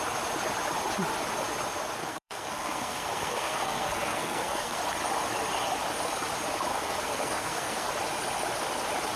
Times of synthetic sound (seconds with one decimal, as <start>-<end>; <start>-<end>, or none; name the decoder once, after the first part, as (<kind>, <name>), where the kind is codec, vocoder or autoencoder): 2.0-4.8 (codec, SNAC); 6.7-7.9